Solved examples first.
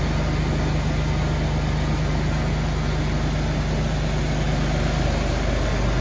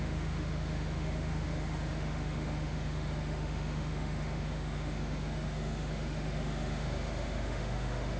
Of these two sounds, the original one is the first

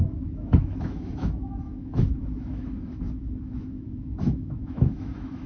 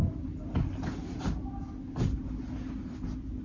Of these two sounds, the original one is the second